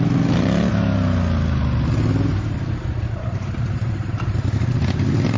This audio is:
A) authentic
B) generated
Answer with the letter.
A